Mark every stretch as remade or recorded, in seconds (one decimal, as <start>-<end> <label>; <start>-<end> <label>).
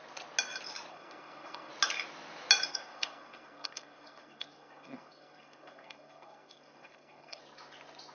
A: 0.0-0.9 recorded; 0.9-1.7 remade; 1.7-2.7 recorded; 2.7-7.4 remade; 7.4-8.1 recorded